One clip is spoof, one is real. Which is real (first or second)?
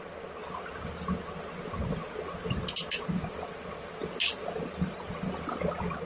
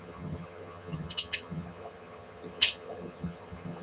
first